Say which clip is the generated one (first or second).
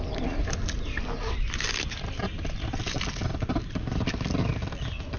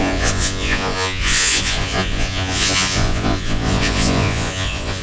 second